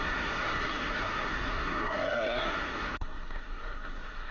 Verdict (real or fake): fake